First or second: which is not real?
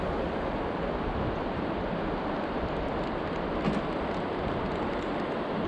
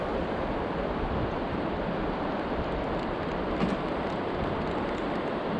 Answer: second